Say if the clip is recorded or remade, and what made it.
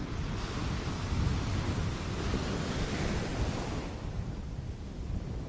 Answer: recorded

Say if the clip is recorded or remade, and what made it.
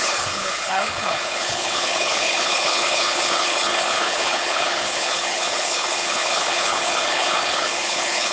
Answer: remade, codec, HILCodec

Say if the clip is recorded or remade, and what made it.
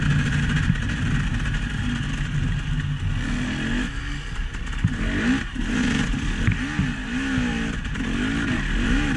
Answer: recorded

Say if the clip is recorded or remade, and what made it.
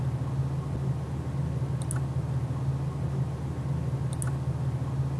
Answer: recorded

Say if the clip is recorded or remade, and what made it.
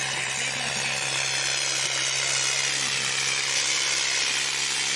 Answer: recorded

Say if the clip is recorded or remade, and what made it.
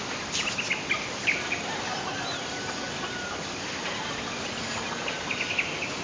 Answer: recorded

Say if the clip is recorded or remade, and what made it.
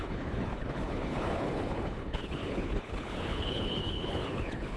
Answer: remade, codec, HILCodec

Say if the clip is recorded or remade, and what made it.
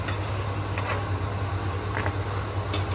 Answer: recorded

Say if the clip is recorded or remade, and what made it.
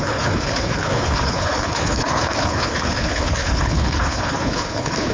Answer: remade, codec, HILCodec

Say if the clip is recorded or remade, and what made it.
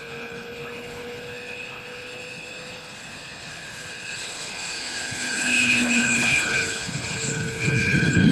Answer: remade, codec, HILCodec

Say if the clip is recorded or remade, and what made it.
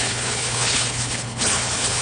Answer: remade, codec, HILCodec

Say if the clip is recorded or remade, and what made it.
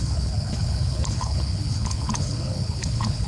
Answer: remade, codec, HILCodec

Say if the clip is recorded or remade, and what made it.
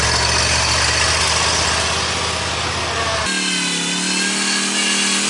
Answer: recorded